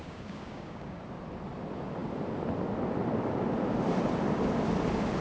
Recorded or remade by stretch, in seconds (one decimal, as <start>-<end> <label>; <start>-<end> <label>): 0.0-1.0 remade; 1.0-5.2 recorded